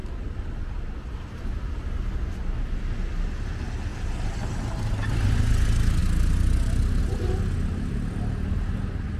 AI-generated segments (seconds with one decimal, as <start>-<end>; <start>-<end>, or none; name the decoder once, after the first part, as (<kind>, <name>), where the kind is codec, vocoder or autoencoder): none